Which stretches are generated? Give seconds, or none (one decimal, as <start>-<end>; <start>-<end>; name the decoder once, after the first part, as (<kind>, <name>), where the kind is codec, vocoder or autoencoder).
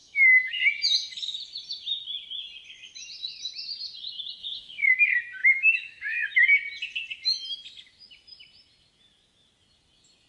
0.0-0.6 (autoencoder, DAC-VAE); 4.4-4.9; 5.4-6.4